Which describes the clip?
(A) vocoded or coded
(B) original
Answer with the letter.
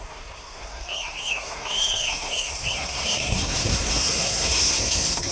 A